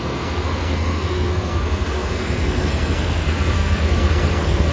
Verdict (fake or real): fake